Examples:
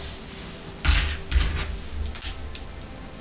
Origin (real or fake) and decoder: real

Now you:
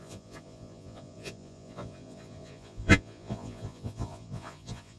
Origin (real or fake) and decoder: fake, vocoder, Vocos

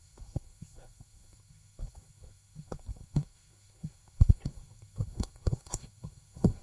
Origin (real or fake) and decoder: fake, codec, SNAC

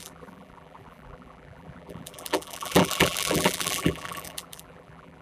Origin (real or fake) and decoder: fake, vocoder, BigVGAN v2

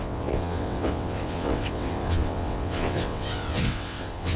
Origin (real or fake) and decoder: fake, vocoder, WaveNeXt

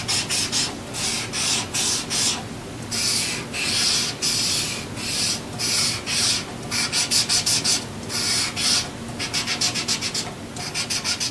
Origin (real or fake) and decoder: real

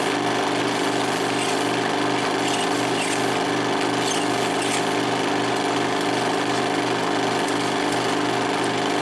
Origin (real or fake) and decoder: real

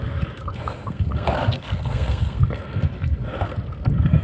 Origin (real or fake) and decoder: fake, codec, SNAC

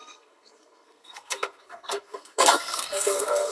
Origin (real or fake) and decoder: fake, codec, SNAC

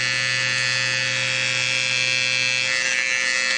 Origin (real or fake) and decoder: real